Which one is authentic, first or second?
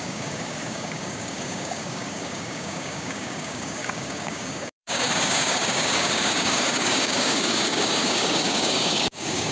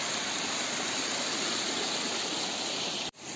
second